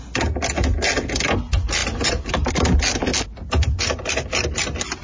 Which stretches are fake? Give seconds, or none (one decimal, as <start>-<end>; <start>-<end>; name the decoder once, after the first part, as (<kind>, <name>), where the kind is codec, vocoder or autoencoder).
none